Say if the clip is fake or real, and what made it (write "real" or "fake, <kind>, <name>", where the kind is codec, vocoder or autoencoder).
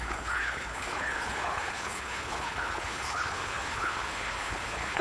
fake, codec, HILCodec